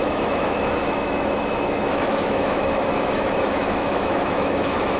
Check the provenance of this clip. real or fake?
fake